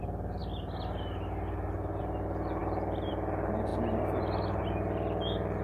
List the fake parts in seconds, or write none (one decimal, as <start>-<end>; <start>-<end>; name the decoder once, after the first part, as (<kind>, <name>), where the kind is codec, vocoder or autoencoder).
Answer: none